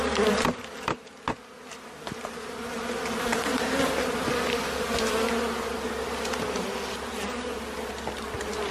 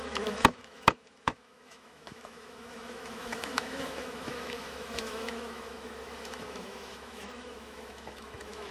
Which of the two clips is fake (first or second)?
second